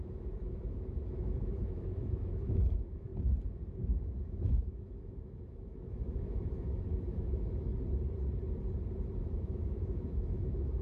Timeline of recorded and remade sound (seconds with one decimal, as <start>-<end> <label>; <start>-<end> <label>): 0.0-3.1 remade; 3.1-3.8 recorded; 3.8-7.7 remade; 7.7-9.2 recorded; 9.2-10.8 remade